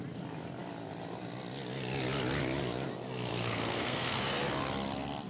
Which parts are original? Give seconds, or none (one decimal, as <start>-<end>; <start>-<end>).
0.0-3.3; 4.2-5.3